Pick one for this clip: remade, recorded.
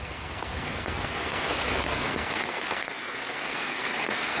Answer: remade